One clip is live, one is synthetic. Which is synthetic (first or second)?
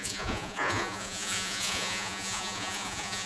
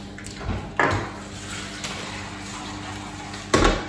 first